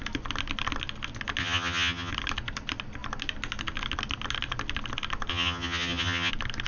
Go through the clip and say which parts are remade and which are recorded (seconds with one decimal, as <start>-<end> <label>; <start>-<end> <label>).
0.0-1.4 recorded; 1.4-2.1 remade; 2.1-5.3 recorded; 5.3-6.3 remade; 6.3-6.7 recorded